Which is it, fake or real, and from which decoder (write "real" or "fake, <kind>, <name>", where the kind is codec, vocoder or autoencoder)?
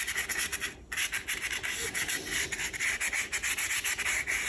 real